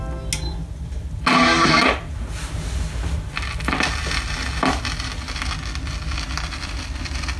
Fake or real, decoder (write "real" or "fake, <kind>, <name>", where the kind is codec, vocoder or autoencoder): real